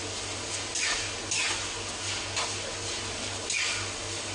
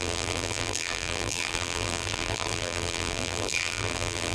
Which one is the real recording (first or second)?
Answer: first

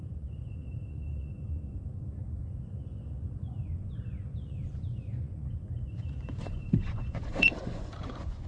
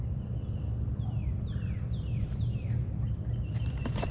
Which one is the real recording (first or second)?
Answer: second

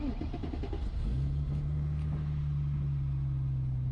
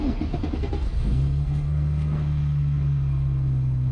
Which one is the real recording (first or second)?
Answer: first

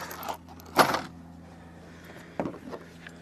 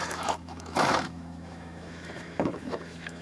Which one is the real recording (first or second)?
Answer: first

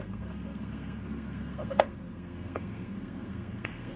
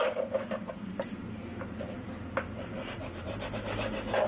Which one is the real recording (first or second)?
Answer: second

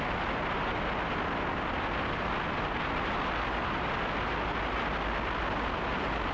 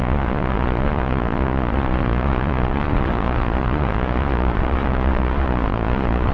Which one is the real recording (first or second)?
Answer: first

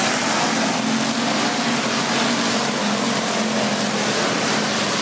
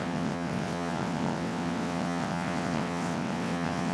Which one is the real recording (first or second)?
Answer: first